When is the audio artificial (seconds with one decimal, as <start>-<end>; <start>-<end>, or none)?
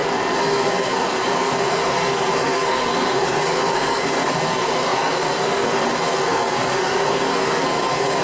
0.0-8.2